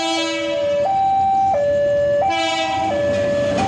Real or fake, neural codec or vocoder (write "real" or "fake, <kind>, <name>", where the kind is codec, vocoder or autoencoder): real